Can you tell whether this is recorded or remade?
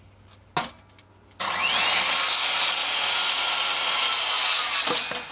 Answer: recorded